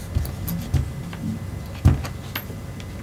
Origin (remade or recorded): recorded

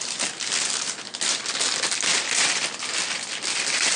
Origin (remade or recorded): recorded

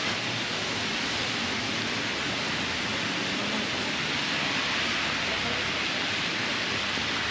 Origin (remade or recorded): recorded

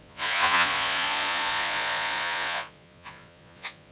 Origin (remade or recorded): remade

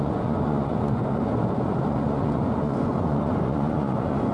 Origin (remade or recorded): remade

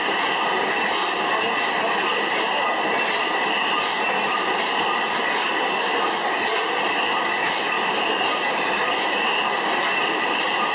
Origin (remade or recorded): recorded